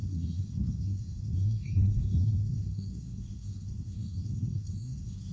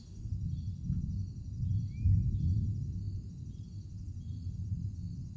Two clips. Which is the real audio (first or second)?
second